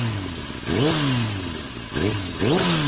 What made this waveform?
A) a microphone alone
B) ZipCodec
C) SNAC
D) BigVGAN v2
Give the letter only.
A